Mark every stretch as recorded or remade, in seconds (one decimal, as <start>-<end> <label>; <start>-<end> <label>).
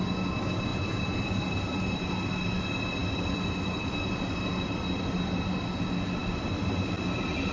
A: 0.0-0.7 recorded; 0.7-2.1 remade; 2.1-7.5 recorded